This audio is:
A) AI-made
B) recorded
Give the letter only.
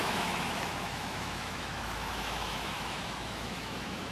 A